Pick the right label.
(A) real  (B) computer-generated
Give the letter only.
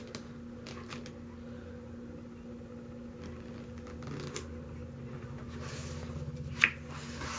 A